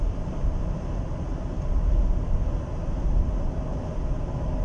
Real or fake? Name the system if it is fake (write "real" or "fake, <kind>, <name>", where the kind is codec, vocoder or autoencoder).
real